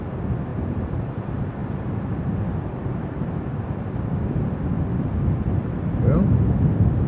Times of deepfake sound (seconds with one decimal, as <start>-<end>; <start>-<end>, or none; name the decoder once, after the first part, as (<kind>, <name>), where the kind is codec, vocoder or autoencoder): 0.5-1.1 (vocoder, BigVGAN v2)